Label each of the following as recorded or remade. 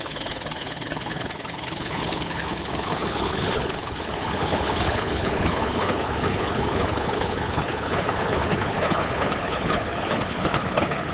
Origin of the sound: remade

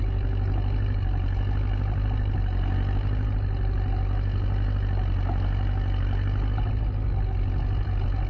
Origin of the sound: recorded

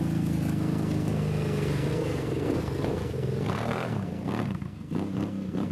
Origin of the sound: remade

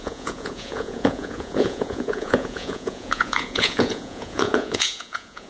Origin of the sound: remade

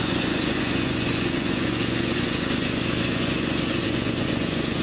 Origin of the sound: remade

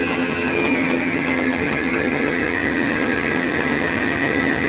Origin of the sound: remade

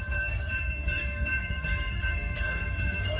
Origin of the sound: remade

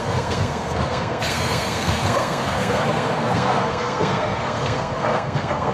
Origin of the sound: remade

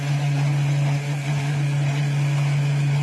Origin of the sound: recorded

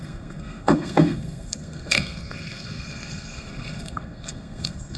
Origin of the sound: remade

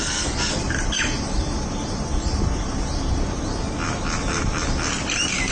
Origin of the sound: recorded